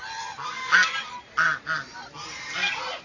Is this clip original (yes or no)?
yes